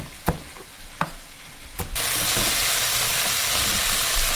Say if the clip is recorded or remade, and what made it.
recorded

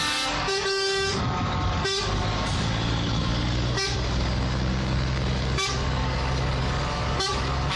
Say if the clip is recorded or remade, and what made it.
remade, codec, DAC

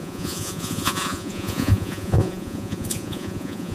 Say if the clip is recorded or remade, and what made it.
remade, vocoder, Vocos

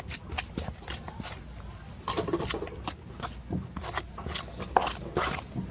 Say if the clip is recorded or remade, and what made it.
recorded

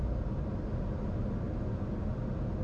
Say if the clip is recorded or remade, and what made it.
recorded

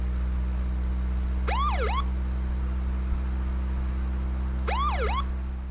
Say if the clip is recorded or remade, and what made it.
recorded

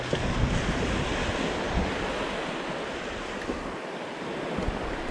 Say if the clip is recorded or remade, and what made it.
recorded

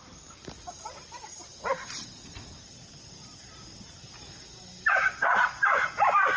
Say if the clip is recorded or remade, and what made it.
remade, vocoder, BigVGAN v2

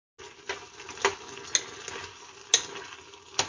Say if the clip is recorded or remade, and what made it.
recorded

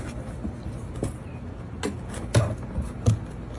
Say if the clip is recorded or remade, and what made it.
recorded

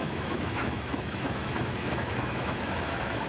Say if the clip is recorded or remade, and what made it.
remade, autoencoder, DAC-VAE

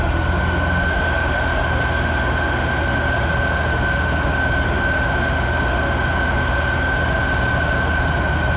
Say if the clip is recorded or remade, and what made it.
remade, autoencoder, DAC-VAE